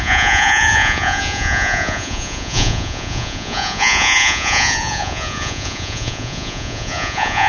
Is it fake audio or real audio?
fake